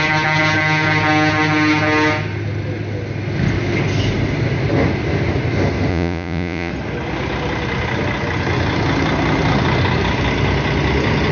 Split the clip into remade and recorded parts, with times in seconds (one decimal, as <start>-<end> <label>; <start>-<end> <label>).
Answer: 0.0-5.9 recorded; 5.9-6.7 remade; 6.7-11.3 recorded